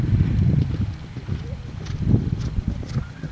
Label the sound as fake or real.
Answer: real